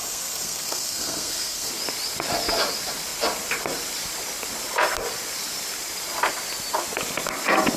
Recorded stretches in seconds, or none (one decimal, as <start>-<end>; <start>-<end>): 1.7-7.8